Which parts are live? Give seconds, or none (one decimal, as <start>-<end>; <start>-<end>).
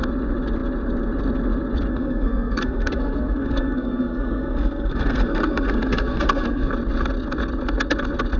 0.0-1.9; 6.7-8.4